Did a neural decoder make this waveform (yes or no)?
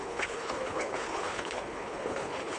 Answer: yes